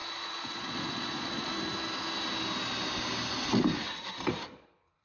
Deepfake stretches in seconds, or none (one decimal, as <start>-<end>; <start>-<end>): 0.0-1.5; 4.5-5.0